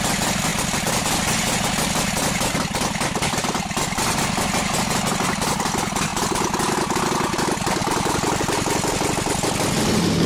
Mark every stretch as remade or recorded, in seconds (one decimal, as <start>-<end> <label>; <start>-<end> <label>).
0.0-10.3 recorded